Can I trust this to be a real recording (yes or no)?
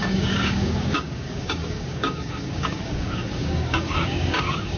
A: no